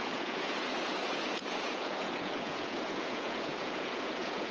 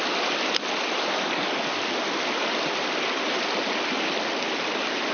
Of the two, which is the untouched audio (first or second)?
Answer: second